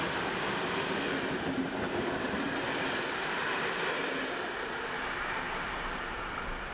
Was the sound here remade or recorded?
recorded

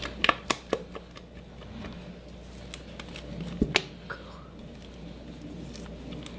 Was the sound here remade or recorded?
recorded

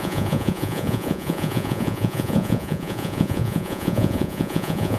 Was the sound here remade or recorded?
remade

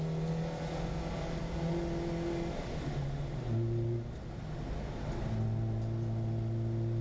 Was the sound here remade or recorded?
recorded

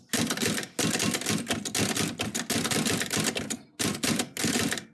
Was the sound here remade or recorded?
recorded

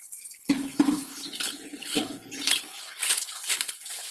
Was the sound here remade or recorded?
remade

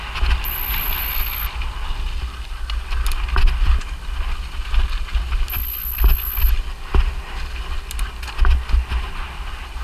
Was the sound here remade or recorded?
recorded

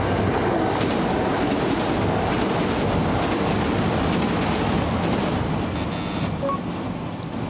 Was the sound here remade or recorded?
recorded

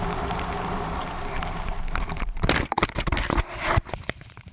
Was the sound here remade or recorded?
remade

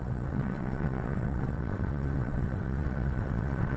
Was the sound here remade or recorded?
remade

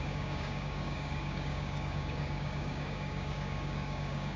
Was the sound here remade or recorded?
remade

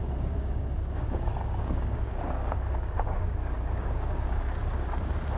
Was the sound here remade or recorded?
remade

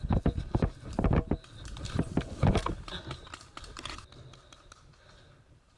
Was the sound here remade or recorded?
recorded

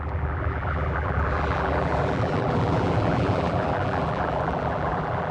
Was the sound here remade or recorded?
remade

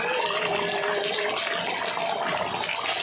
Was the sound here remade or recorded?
recorded